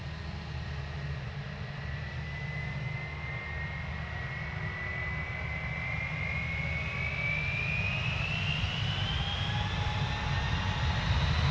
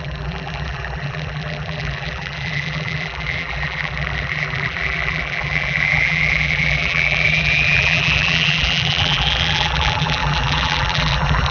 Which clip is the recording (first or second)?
first